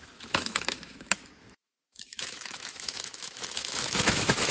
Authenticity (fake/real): fake